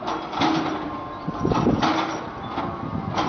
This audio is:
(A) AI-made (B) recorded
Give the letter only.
B